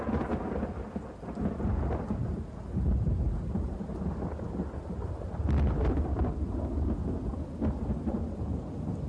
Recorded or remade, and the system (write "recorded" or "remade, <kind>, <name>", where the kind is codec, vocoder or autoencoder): recorded